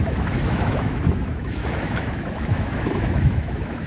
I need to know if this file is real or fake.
fake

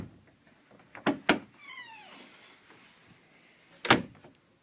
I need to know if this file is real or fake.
real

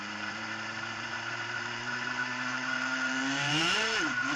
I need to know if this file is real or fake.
fake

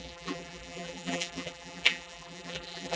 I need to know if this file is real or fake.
fake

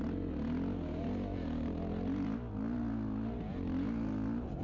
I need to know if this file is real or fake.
real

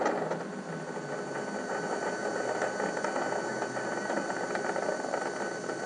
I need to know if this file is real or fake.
real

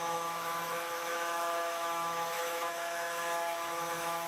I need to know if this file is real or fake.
fake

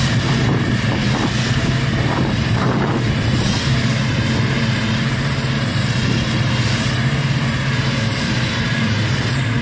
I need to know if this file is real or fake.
fake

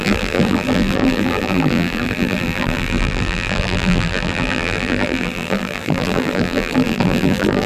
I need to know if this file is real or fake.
fake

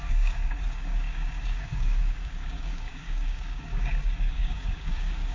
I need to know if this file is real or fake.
fake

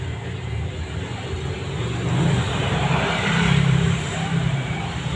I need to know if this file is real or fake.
fake